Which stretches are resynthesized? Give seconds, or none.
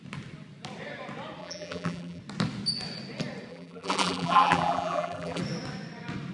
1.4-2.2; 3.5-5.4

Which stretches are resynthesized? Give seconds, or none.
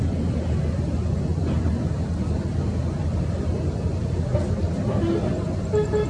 none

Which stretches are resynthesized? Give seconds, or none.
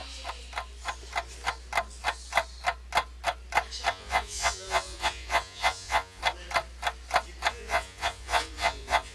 3.9-6.2; 7.5-9.1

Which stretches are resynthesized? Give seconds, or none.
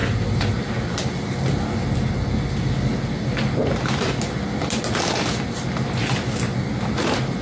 none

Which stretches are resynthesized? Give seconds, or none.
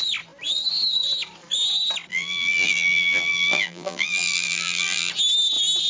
2.1-5.1